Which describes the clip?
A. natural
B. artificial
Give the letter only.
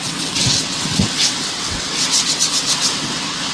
B